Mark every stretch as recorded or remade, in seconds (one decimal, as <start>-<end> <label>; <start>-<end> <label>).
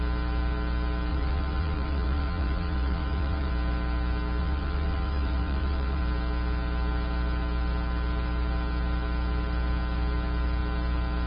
0.0-1.1 recorded; 1.1-3.5 remade; 3.5-4.4 recorded; 4.4-6.0 remade; 6.0-11.3 recorded